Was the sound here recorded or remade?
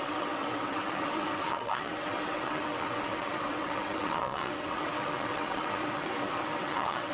remade